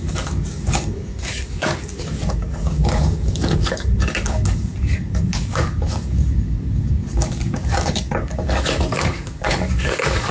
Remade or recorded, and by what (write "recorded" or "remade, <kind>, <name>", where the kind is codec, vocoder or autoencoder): remade, codec, DAC